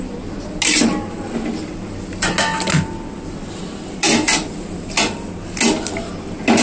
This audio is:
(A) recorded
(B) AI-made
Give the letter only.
A